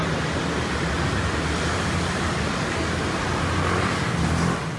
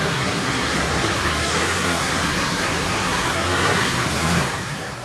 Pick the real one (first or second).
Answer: first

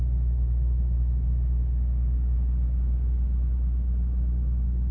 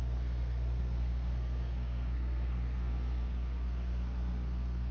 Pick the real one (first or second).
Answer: first